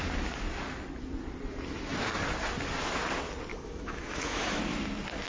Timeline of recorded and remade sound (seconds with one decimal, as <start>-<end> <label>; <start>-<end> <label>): 0.0-3.5 recorded; 3.5-4.6 remade; 4.6-5.3 recorded